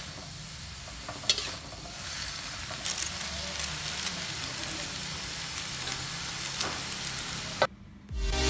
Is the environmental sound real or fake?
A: real